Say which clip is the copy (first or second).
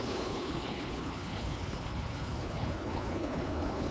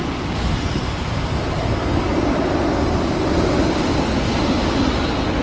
first